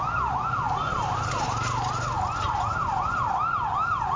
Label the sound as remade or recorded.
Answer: recorded